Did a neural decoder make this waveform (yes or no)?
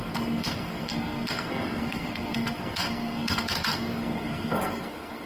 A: yes